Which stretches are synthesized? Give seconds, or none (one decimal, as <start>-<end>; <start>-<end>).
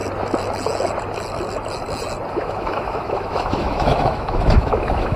2.3-5.2